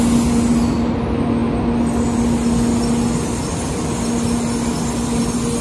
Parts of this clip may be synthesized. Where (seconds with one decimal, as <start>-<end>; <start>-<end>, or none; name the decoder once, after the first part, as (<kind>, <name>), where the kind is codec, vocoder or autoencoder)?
none